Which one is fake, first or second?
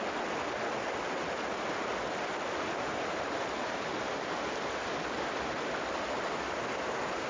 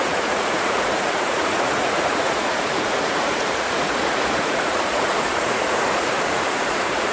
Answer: second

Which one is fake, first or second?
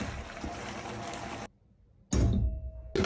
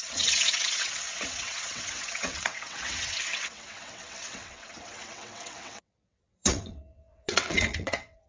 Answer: second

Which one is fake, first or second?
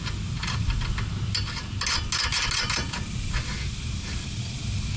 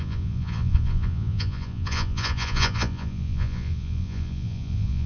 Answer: second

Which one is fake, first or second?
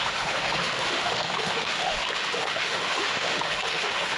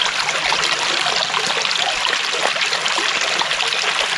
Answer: first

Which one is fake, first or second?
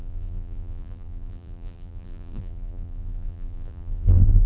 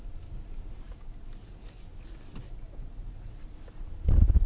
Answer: first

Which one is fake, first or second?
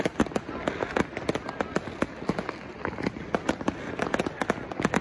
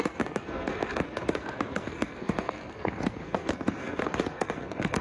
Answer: second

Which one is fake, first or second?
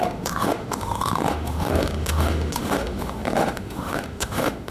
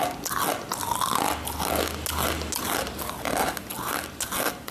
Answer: first